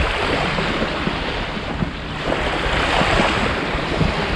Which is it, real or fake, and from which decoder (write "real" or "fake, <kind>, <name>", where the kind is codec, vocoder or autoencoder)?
real